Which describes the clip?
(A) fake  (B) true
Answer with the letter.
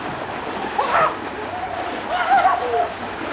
B